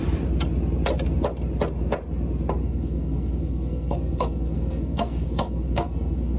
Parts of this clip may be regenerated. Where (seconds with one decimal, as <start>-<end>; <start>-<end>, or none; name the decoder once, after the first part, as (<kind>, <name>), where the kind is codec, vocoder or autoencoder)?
2.6-6.4 (codec, SNAC)